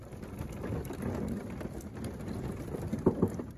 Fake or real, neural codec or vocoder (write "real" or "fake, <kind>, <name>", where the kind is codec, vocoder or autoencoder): real